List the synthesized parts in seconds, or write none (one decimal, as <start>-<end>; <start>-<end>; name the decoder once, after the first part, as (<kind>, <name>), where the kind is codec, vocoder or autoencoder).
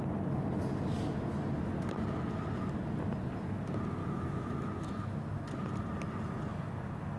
4.0-5.3 (autoencoder, DAC-VAE)